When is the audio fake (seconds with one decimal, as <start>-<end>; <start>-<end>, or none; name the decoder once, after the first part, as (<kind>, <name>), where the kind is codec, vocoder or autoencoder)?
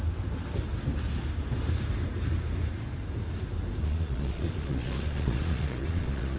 3.8-6.4 (vocoder, Vocos)